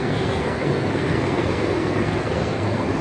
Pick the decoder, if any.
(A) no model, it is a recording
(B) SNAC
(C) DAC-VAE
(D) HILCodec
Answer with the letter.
B